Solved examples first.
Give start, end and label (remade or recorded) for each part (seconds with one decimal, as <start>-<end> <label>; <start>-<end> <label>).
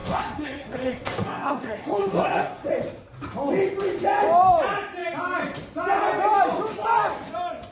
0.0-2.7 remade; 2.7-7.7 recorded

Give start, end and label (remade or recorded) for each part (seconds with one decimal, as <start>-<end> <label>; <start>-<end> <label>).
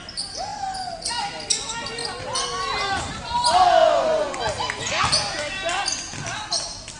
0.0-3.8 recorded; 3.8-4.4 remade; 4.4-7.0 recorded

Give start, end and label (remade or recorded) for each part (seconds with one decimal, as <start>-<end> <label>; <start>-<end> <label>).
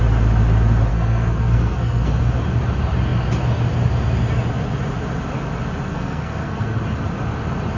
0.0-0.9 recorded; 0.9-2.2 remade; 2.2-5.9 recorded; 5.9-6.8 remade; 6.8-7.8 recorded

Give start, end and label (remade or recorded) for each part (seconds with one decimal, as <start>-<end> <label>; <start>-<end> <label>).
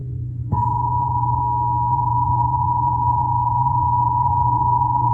0.0-1.4 remade; 1.4-1.9 recorded; 1.9-5.1 remade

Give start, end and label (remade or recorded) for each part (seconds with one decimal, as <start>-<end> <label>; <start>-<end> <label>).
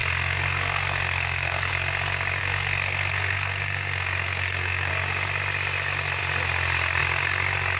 0.0-1.7 remade; 1.7-2.4 recorded; 2.4-4.9 remade; 4.9-7.8 recorded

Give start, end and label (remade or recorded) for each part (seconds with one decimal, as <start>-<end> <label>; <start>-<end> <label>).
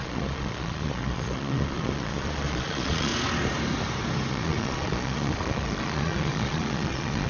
0.0-3.1 remade; 3.1-4.3 recorded; 4.3-7.3 remade